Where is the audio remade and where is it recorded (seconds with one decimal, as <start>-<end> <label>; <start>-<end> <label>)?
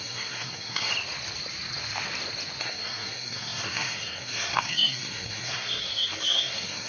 0.0-0.9 remade; 0.9-2.6 recorded; 2.6-6.9 remade